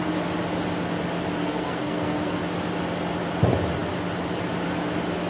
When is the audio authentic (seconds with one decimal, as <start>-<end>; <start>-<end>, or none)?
0.0-1.4; 2.4-5.3